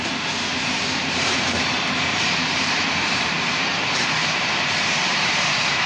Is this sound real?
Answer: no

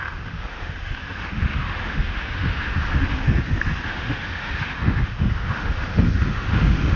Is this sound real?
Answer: no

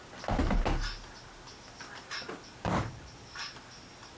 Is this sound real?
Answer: yes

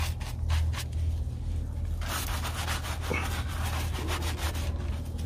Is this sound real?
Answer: yes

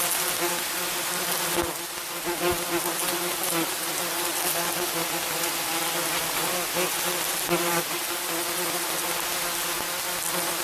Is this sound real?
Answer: yes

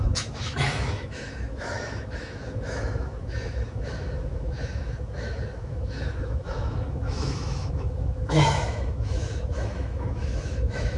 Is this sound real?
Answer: no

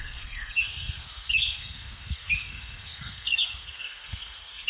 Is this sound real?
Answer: no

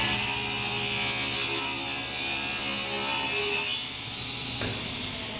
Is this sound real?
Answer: yes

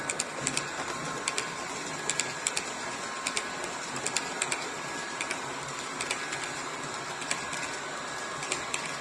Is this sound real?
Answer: yes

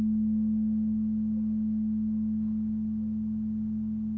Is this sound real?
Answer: yes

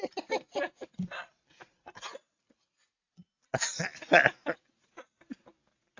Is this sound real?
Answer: yes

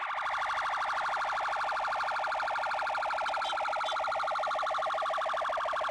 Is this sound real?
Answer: yes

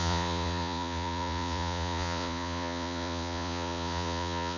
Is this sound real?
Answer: no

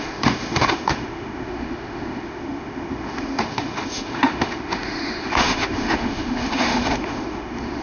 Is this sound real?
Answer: no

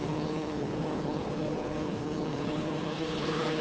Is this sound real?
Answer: no